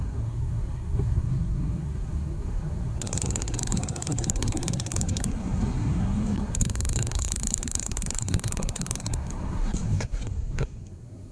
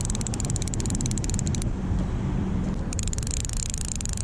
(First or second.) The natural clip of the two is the second